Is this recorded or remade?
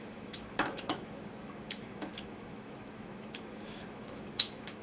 remade